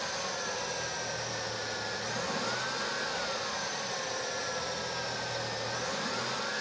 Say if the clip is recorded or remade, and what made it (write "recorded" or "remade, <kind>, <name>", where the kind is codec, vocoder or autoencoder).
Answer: recorded